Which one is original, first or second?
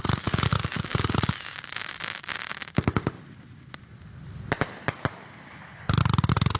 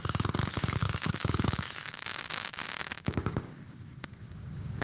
first